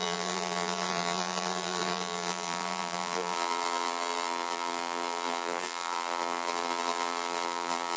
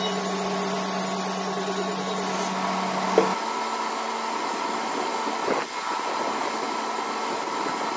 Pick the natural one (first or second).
second